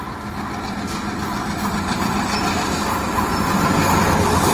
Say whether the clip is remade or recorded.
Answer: recorded